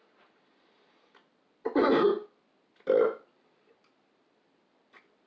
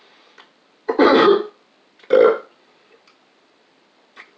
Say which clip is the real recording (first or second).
first